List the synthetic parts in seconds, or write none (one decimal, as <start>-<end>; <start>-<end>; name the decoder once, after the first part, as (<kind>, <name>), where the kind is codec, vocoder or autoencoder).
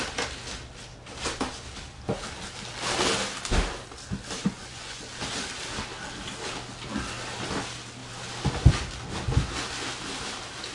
4.4-5.0 (vocoder, Vocos)